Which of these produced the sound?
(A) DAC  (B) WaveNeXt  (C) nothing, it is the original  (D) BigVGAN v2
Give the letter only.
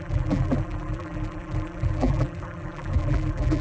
D